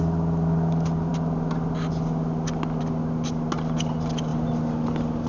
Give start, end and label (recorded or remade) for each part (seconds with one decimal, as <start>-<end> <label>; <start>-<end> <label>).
0.0-5.3 recorded